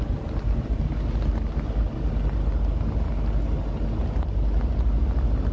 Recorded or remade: recorded